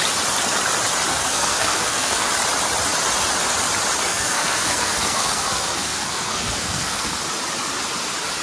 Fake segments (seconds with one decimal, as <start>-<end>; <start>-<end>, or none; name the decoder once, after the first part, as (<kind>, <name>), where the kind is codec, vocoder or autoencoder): 1.1-2.3 (codec, SNAC); 4.1-7.2